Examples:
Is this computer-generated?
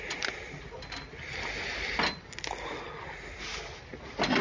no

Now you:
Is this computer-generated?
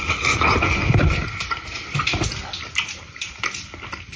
no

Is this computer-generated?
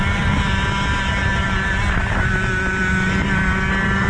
no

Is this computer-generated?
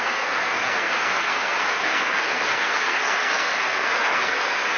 yes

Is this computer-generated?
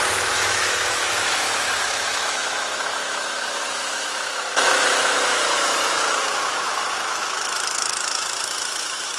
yes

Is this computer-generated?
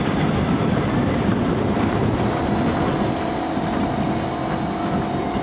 no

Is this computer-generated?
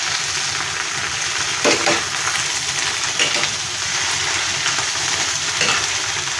no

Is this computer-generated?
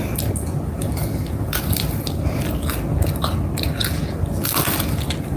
no